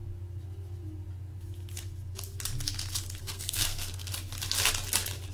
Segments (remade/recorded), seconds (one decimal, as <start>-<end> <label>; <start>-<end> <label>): 0.0-3.2 recorded; 3.2-4.1 remade; 4.1-5.3 recorded